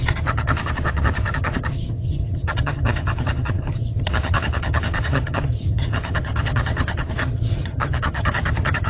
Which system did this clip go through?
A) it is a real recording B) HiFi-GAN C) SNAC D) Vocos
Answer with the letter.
B